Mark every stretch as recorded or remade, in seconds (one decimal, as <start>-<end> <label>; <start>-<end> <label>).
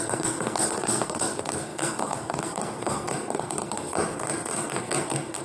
0.0-5.4 remade